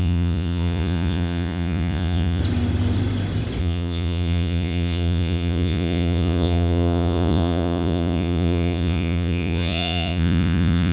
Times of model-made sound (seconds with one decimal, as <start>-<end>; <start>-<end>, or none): 0.0-2.4; 3.6-10.9